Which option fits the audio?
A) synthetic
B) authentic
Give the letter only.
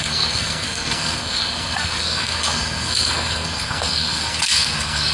A